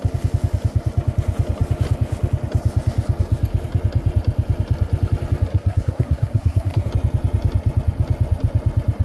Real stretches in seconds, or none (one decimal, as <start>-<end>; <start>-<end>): 0.0-5.5; 6.9-9.0